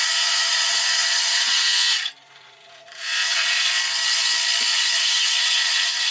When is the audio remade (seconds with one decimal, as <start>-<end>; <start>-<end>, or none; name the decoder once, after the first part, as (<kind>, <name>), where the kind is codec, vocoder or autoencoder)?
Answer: 0.0-3.7 (vocoder, Vocos); 4.7-6.1